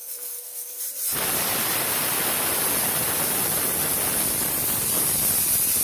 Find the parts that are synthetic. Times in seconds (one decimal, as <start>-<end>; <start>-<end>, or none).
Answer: 0.0-0.8